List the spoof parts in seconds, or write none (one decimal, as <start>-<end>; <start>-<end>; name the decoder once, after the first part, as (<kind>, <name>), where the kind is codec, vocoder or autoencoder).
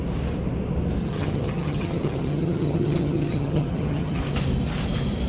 1.0-4.2 (vocoder, HiFi-GAN)